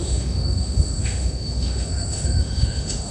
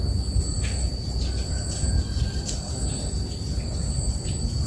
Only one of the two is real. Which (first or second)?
second